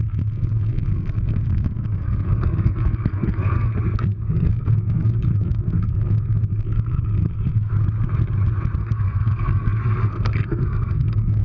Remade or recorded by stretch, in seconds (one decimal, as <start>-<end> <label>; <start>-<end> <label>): 0.0-3.7 remade; 3.7-4.2 recorded; 4.2-7.7 remade; 7.7-8.8 recorded; 8.8-11.4 remade